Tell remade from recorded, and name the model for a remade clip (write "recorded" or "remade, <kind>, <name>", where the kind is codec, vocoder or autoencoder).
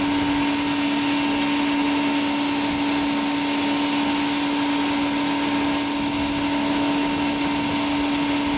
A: recorded